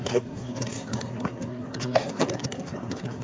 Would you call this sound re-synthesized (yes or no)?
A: yes